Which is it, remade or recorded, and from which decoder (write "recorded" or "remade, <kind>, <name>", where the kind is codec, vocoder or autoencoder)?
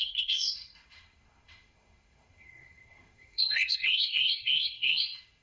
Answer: remade, codec, SNAC